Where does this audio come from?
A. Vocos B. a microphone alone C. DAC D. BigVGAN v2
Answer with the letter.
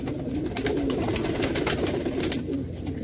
B